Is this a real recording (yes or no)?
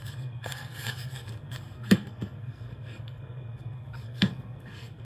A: no